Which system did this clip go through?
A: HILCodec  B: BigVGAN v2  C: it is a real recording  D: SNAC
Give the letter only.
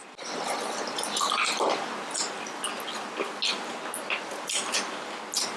C